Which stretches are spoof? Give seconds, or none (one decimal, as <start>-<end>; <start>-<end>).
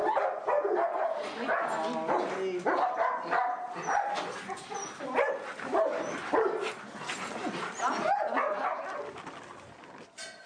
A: none